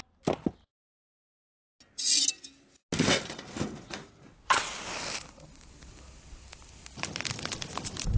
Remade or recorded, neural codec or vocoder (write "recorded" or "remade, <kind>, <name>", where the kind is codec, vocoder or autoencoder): recorded